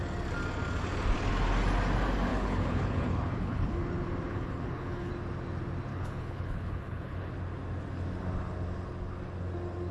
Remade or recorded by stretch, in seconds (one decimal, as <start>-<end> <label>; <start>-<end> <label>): 0.0-2.3 recorded; 2.3-3.8 remade; 3.8-4.3 recorded; 4.3-5.1 remade; 5.1-5.9 recorded; 5.9-7.3 remade; 7.3-9.9 recorded